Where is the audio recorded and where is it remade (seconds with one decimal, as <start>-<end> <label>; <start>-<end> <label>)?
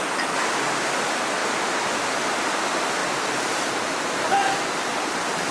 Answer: 0.0-3.0 recorded; 3.0-3.7 remade; 3.7-4.4 recorded; 4.4-5.5 remade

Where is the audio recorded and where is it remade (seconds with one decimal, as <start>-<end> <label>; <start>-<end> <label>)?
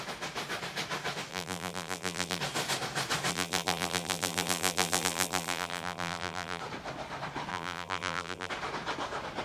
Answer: 0.0-1.3 recorded; 1.3-2.4 remade; 2.4-3.3 recorded; 3.3-6.6 remade; 6.6-7.5 recorded; 7.5-8.5 remade; 8.5-9.4 recorded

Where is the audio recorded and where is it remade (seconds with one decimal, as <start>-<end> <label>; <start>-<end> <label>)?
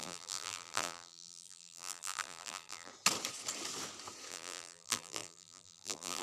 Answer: 0.0-2.9 remade; 2.9-4.3 recorded; 4.3-6.2 remade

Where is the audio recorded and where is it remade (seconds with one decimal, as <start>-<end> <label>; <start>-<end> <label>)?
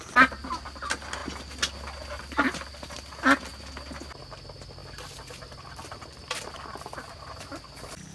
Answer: 0.0-7.1 recorded; 7.1-7.6 remade; 7.6-8.1 recorded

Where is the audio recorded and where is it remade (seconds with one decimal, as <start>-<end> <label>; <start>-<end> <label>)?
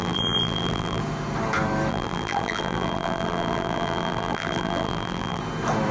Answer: 0.0-1.0 remade; 1.0-1.9 recorded; 1.9-5.4 remade; 5.4-5.9 recorded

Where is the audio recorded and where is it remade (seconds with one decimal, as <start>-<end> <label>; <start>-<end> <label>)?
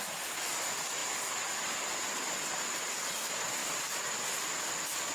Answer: 0.0-5.1 recorded